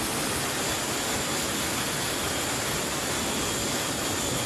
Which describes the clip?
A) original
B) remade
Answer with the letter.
A